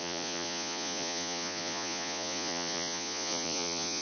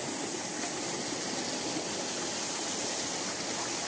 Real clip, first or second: second